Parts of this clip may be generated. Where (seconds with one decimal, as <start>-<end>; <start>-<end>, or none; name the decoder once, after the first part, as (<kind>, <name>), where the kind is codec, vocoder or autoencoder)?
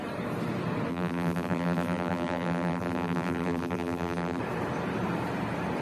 0.9-4.4 (vocoder, BigVGAN v2)